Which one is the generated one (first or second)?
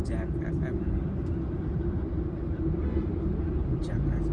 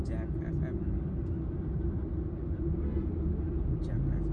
first